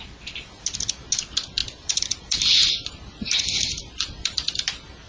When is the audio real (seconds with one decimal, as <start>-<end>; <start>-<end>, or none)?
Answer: 0.0-1.6